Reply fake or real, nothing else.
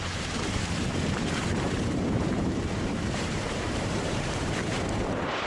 fake